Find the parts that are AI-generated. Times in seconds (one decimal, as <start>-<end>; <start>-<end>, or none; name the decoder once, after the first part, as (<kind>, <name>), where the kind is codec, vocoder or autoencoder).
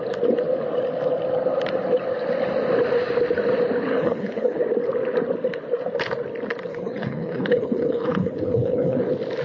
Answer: 3.9-4.6 (codec, HILCodec); 6.7-9.0